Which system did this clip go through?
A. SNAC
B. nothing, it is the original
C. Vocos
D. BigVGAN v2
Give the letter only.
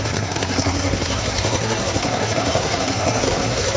A